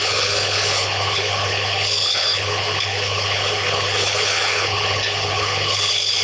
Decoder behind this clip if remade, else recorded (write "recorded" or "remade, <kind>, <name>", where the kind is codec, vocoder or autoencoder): remade, codec, HILCodec